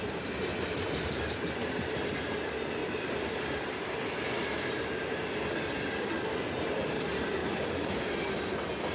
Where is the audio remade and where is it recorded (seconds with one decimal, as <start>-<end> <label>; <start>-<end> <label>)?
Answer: 0.0-0.5 recorded; 0.5-2.0 remade; 2.0-2.8 recorded; 2.8-4.9 remade; 4.9-7.4 recorded; 7.4-8.1 remade; 8.1-8.9 recorded